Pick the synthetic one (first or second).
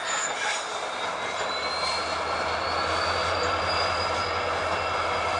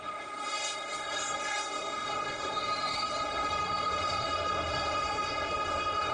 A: second